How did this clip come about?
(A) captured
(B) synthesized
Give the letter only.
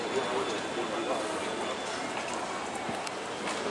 A